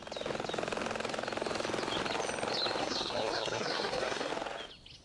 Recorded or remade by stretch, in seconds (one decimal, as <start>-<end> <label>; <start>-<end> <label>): 0.0-2.8 recorded; 2.8-4.3 remade; 4.3-5.0 recorded